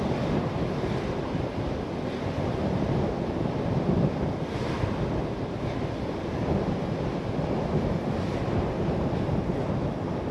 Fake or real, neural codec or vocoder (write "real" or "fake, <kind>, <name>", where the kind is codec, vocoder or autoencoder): real